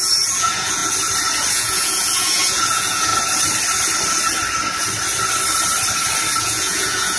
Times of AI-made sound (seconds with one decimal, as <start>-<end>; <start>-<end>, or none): 0.0-0.8; 1.5-3.1; 6.4-7.2